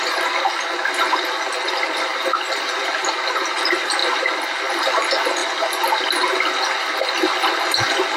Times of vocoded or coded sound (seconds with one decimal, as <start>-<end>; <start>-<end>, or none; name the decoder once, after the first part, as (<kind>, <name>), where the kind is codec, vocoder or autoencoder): none